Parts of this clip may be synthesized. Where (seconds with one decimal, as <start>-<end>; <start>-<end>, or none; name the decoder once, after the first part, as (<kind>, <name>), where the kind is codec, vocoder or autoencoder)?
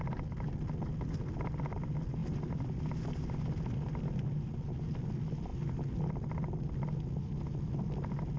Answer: none